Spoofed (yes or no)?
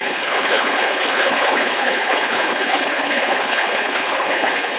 yes